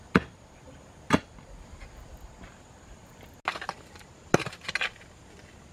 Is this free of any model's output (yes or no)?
yes